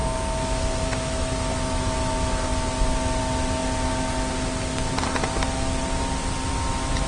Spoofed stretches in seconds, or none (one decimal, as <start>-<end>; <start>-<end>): 0.0-2.1